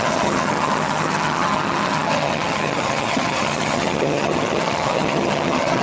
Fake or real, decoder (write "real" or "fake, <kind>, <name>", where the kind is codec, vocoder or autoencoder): fake, vocoder, HiFi-GAN